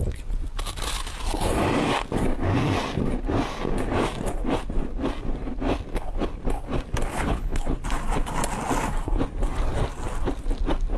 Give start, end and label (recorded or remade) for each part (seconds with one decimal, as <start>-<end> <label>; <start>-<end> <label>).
0.0-7.1 recorded; 7.1-7.6 remade; 7.6-11.0 recorded